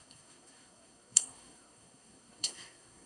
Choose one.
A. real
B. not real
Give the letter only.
B